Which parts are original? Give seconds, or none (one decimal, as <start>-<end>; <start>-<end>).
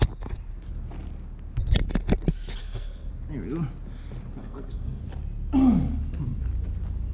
0.0-2.6; 3.1-4.4; 5.0-7.1